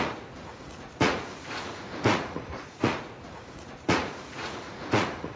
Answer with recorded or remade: remade